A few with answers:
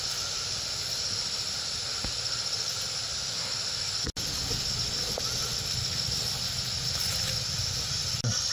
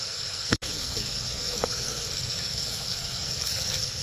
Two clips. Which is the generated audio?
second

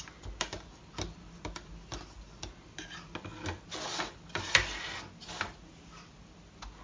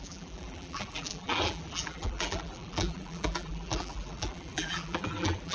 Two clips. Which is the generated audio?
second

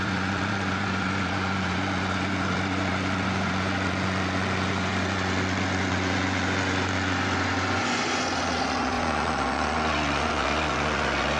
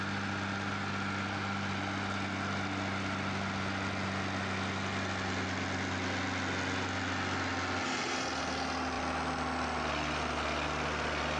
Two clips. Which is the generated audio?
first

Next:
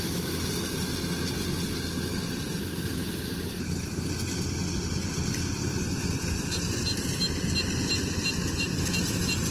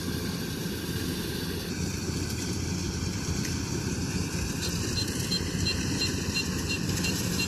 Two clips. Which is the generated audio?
second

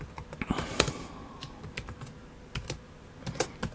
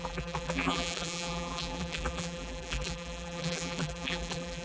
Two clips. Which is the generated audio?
second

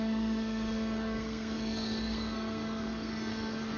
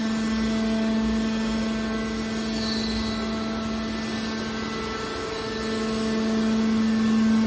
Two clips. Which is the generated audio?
first